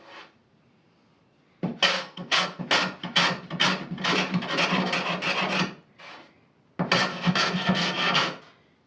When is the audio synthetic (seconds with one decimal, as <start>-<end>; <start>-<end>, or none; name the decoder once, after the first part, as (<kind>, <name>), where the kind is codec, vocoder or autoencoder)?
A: 1.9-2.6 (codec, SNAC); 7.1-8.4